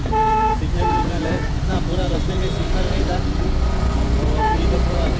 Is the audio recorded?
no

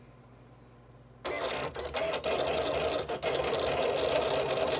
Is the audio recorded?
yes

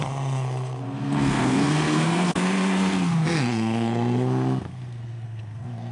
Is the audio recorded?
no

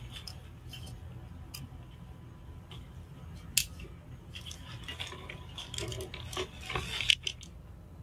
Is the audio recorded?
yes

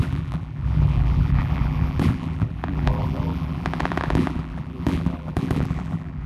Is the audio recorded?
no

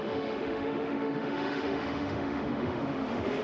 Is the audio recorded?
no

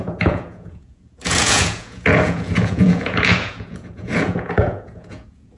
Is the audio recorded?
no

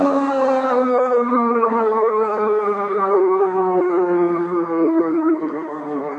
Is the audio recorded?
no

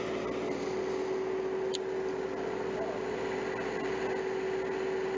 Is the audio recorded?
yes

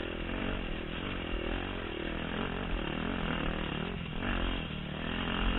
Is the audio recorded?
yes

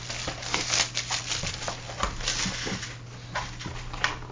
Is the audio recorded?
yes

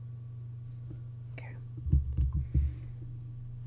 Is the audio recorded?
yes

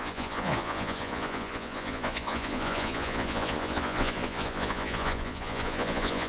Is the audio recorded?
no